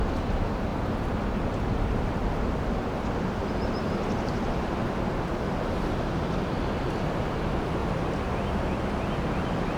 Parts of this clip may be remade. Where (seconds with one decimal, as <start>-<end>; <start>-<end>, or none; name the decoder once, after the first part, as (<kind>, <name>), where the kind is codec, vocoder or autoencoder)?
0.7-2.3 (vocoder, BigVGAN v2); 3.4-4.4; 7.8-8.8